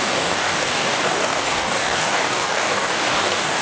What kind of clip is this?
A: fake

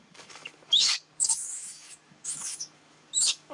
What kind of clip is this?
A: fake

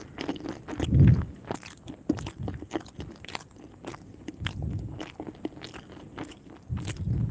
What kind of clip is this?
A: real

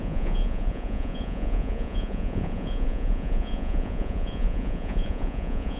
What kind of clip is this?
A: fake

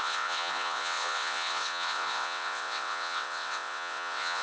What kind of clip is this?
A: fake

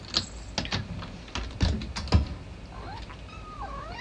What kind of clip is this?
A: real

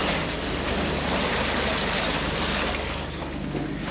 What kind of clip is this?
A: real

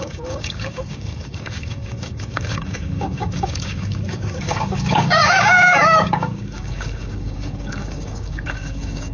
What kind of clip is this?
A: fake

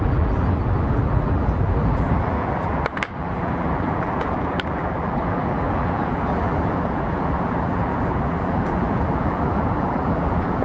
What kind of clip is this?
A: fake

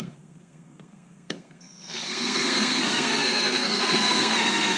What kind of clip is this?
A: fake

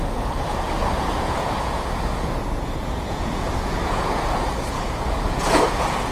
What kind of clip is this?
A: fake